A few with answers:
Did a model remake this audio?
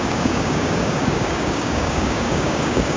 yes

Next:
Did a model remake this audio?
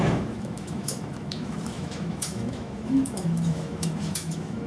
yes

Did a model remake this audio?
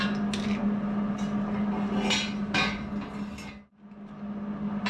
no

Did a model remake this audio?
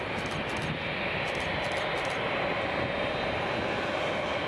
no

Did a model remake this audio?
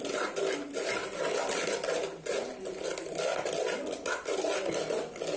no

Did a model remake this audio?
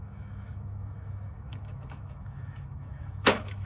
yes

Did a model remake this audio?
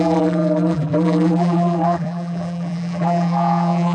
yes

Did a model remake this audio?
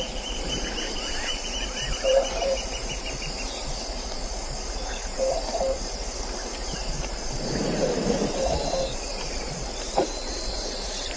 yes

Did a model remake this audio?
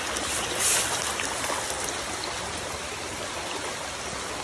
no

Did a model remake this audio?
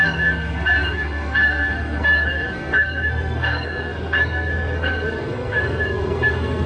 yes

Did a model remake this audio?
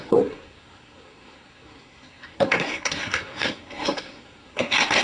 yes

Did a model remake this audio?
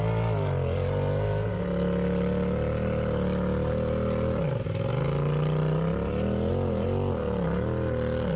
no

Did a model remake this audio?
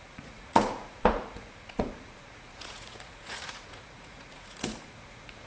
yes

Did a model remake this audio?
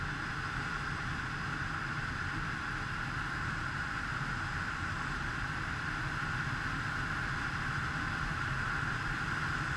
no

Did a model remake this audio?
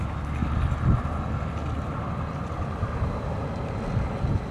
no